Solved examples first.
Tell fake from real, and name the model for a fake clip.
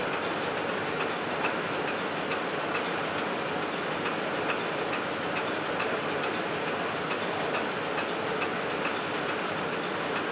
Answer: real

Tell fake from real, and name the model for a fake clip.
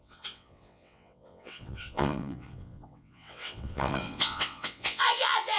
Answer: fake, vocoder, WaveNeXt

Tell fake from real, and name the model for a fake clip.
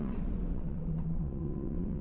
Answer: fake, vocoder, WaveNeXt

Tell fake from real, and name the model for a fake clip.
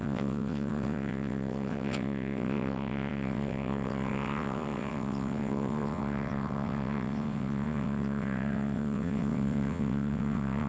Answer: fake, vocoder, WaveNeXt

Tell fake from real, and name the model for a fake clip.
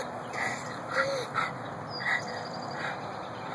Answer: real